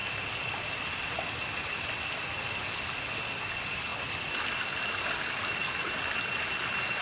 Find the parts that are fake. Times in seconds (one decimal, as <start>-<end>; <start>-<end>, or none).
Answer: none